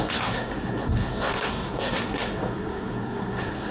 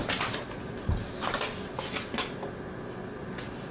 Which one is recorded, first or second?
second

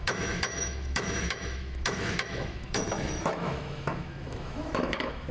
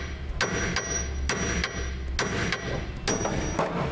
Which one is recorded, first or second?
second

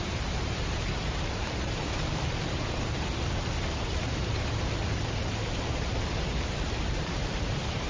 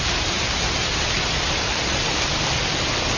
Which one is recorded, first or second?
second